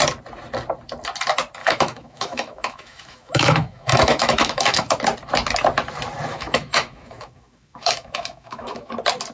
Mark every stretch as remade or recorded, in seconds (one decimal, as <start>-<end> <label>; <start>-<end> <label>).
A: 0.0-1.6 recorded; 1.6-5.0 remade; 5.0-6.3 recorded; 6.3-8.9 remade; 8.9-9.3 recorded